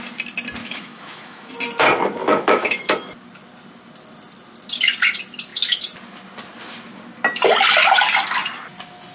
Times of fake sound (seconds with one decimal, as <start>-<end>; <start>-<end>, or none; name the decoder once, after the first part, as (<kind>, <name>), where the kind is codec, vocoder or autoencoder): 0.6-1.5 (autoencoder, DAC-VAE); 2.2-2.8